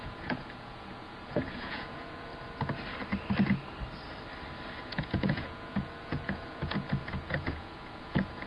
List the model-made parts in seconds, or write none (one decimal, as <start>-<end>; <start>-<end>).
0.0-2.3; 4.8-8.5